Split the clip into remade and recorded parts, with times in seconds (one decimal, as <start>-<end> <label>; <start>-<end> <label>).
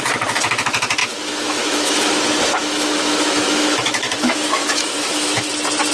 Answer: 0.0-1.0 recorded; 1.0-2.1 remade; 2.1-2.6 recorded; 2.6-5.5 remade; 5.5-5.9 recorded